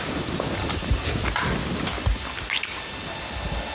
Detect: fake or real real